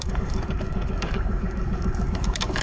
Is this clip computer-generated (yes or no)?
yes